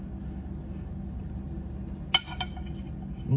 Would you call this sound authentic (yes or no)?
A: yes